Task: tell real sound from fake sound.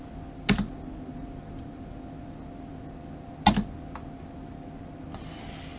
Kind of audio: real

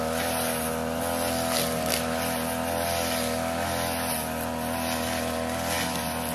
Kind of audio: real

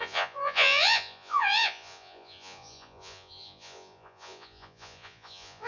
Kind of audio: fake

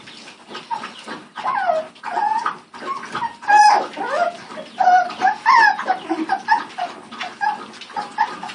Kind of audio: real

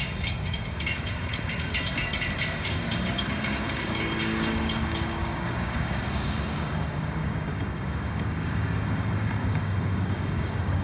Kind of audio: fake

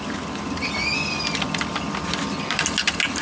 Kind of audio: real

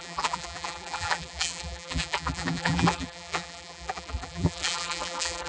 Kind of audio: fake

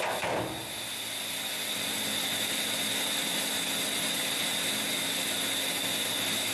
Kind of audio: real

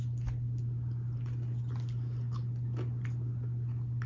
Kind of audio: real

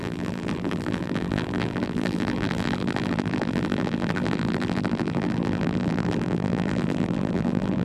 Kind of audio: fake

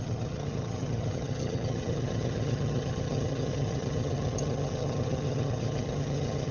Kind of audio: fake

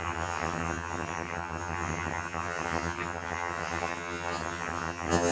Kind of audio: fake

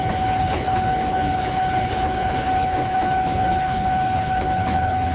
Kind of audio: fake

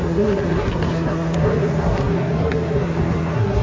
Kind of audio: fake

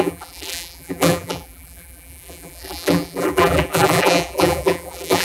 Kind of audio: fake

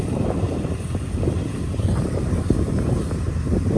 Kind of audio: fake